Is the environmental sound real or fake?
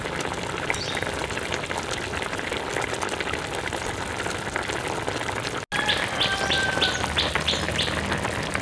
real